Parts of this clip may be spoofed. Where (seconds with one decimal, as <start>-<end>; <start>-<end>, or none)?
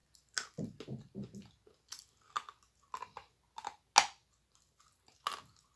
none